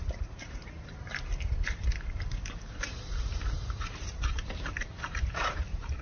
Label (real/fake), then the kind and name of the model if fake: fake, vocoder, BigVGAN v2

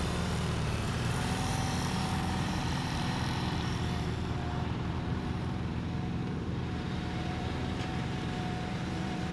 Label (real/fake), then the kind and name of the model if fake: fake, vocoder, BigVGAN v2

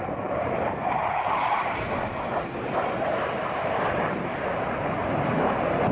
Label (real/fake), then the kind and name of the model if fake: real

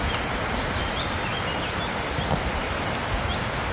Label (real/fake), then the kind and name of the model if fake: real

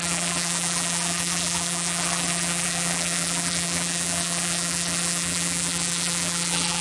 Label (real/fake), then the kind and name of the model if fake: fake, vocoder, BigVGAN v2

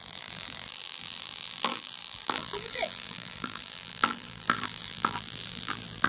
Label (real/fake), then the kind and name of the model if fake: fake, vocoder, BigVGAN v2